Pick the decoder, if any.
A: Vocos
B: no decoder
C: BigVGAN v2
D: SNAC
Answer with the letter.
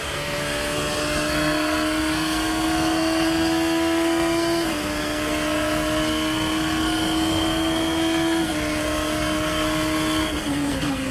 D